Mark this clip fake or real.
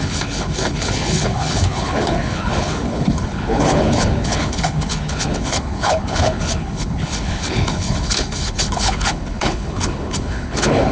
fake